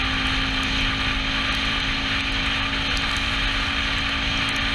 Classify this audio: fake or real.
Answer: real